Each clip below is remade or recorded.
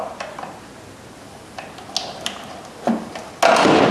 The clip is recorded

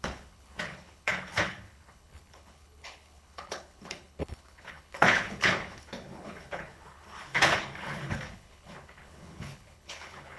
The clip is remade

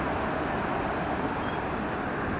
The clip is recorded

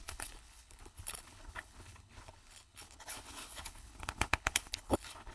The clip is remade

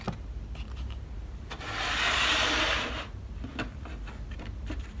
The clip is recorded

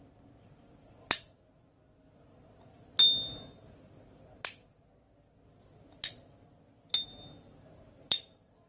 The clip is recorded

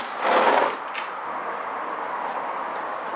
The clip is recorded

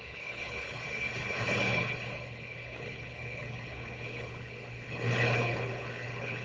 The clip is remade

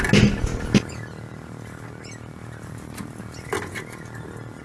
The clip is recorded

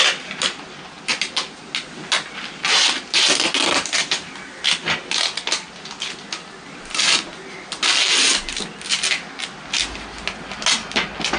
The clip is recorded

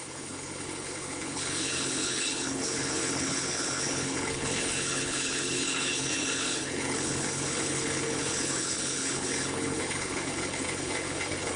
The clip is remade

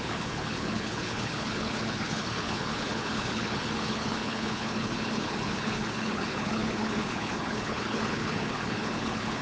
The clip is remade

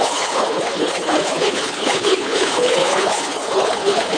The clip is remade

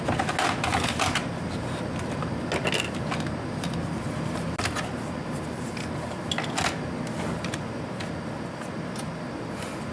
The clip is recorded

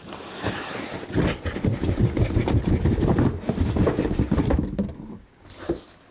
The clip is recorded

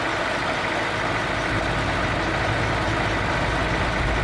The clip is recorded